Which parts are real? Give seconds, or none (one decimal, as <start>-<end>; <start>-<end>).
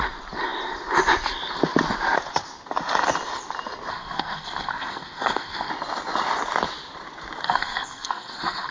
0.0-3.9; 5.7-7.4